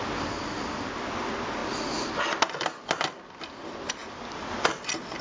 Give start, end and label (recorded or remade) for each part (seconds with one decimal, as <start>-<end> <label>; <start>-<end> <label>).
0.0-5.2 recorded

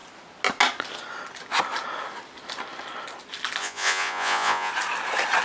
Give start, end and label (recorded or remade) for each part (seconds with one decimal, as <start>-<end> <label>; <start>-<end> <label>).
0.0-3.6 recorded; 3.6-4.7 remade; 4.7-5.4 recorded

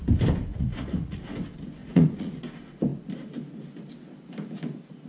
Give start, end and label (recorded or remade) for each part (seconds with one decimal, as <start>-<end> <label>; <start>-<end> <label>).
0.0-0.5 recorded; 0.5-1.2 remade; 1.2-1.8 recorded; 1.8-2.4 remade; 2.4-5.1 recorded

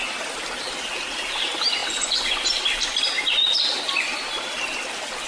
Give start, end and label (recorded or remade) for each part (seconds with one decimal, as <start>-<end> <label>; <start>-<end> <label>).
0.0-5.3 recorded

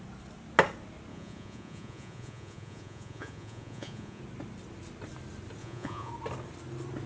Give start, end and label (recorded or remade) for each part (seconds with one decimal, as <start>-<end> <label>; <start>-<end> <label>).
0.0-1.1 recorded; 1.1-4.2 remade; 4.2-5.6 recorded; 5.6-6.1 remade; 6.1-7.1 recorded

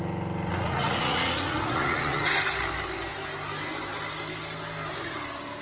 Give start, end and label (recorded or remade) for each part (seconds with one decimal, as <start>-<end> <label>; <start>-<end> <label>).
0.0-0.5 recorded; 0.5-2.2 remade; 2.2-5.6 recorded

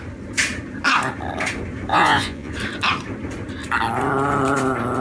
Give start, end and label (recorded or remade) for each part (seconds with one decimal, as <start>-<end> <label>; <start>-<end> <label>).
0.0-1.9 recorded; 1.9-2.5 remade; 2.5-5.0 recorded